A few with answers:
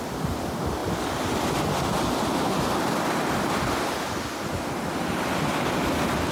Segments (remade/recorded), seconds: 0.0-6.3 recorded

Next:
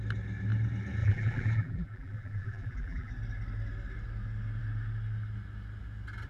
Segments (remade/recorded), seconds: 0.0-1.0 recorded; 1.0-3.1 remade; 3.1-6.3 recorded

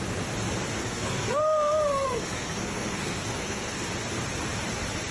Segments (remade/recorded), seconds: 0.0-0.8 recorded; 0.8-3.9 remade; 3.9-5.1 recorded

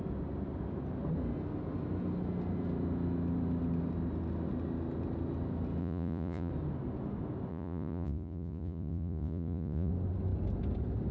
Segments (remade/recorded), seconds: 0.0-5.8 recorded; 5.8-6.5 remade; 6.5-7.5 recorded; 7.5-9.9 remade; 9.9-11.1 recorded

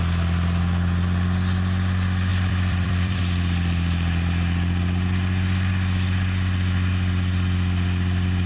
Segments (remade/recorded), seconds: 0.0-2.3 recorded; 2.3-3.2 remade; 3.2-8.5 recorded

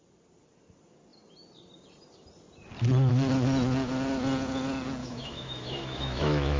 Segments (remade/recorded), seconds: 0.0-5.0 recorded; 5.0-6.6 remade